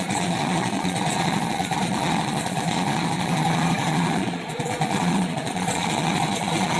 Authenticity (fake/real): fake